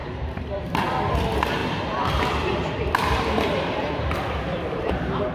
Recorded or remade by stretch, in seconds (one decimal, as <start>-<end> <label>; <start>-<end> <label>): 0.0-5.3 remade